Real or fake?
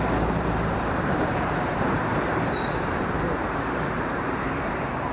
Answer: fake